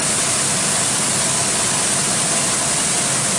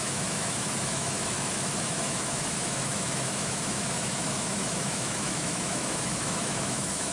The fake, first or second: second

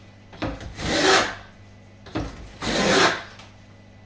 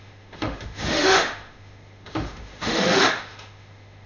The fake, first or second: second